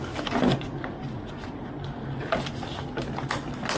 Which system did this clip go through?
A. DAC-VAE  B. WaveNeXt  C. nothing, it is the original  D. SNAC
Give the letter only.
C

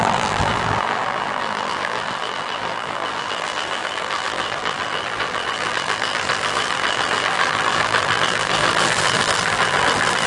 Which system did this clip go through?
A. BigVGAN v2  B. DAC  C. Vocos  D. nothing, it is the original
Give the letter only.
A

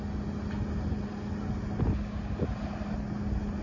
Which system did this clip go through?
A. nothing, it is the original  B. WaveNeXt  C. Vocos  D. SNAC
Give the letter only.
A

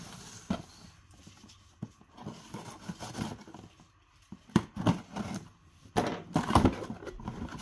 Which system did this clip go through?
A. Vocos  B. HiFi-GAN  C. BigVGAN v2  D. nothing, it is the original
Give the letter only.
D